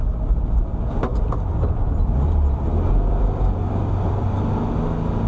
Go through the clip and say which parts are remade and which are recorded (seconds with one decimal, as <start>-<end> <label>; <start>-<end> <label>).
0.0-1.1 recorded; 1.1-4.3 remade; 4.3-5.3 recorded

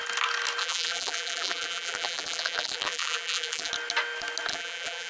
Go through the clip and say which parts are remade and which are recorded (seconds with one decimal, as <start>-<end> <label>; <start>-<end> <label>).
0.0-0.6 recorded; 0.6-3.7 remade; 3.7-4.5 recorded; 4.5-5.1 remade